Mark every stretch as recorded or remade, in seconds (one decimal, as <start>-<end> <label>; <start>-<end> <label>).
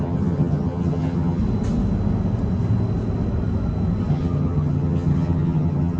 0.0-1.4 remade; 1.4-4.1 recorded; 4.1-6.0 remade